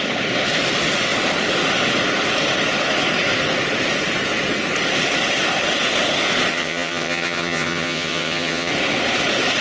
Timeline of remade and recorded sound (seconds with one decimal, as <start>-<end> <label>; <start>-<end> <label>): 0.0-6.5 recorded; 6.5-8.7 remade; 8.7-9.6 recorded